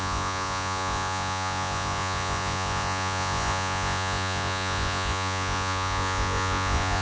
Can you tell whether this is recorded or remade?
remade